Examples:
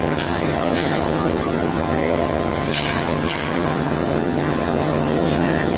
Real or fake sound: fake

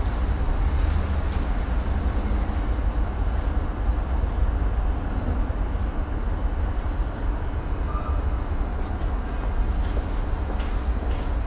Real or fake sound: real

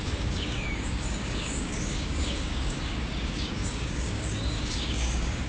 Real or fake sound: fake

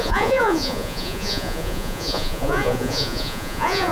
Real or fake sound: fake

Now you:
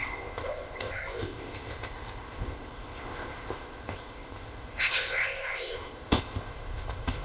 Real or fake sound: fake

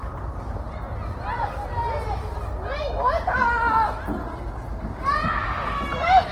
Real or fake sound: real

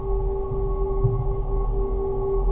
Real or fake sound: real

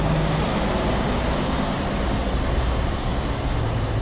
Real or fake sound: real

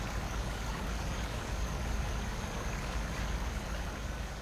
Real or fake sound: fake